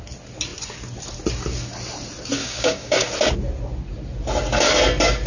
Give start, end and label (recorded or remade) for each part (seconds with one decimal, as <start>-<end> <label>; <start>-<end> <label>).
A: 0.0-2.4 recorded; 2.4-3.1 remade; 3.1-5.3 recorded